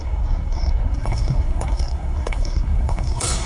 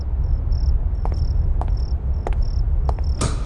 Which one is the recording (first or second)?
second